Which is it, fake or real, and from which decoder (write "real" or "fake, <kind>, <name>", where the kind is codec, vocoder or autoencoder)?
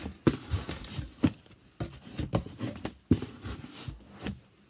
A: real